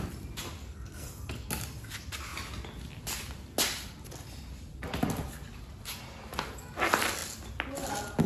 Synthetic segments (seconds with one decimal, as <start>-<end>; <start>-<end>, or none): 0.6-1.5